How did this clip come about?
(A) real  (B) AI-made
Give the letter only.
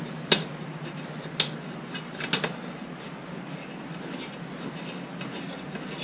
A